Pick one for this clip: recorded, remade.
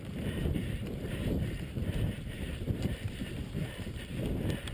remade